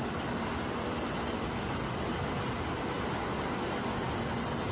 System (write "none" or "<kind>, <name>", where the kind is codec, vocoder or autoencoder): none